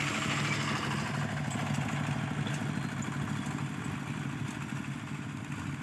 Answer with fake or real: real